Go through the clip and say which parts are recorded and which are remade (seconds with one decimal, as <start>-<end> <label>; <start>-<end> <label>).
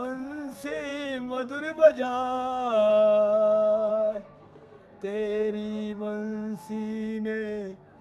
0.0-2.9 remade; 2.9-3.9 recorded; 3.9-8.0 remade